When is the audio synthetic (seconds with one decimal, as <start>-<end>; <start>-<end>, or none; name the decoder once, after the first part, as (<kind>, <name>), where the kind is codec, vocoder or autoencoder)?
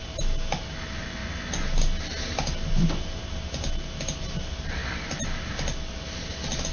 none